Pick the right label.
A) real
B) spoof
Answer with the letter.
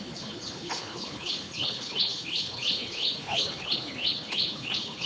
B